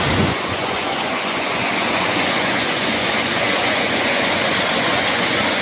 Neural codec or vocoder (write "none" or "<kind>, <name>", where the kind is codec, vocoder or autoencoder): vocoder, Vocos